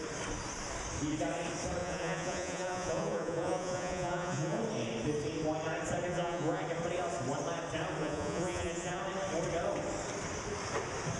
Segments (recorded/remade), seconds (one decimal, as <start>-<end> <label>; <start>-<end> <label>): 0.0-1.8 recorded; 1.8-4.6 remade; 4.6-6.1 recorded; 6.1-6.6 remade; 6.6-8.0 recorded; 8.0-9.0 remade; 9.0-11.2 recorded